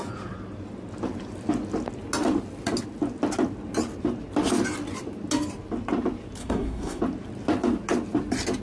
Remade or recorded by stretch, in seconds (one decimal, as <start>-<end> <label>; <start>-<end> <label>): 0.0-6.4 recorded; 6.4-7.0 remade; 7.0-8.6 recorded